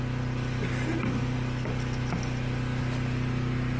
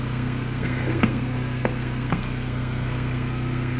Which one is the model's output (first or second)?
second